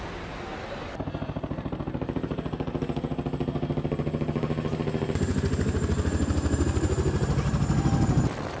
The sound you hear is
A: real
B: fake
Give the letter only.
A